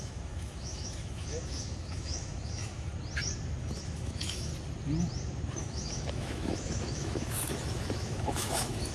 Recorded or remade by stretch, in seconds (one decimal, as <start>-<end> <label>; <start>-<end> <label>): 0.0-2.9 remade; 2.9-3.6 recorded; 3.6-4.5 remade; 4.5-5.6 recorded; 5.6-8.9 remade